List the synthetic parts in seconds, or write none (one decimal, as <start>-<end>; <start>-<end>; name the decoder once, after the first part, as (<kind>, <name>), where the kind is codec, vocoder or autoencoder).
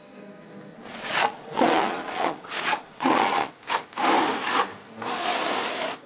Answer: 0.7-3.5 (vocoder, Vocos)